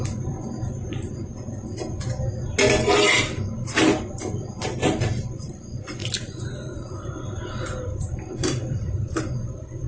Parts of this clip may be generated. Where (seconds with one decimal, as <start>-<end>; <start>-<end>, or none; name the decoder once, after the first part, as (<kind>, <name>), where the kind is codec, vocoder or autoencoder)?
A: 0.0-1.3 (vocoder, BigVGAN v2); 4.0-9.9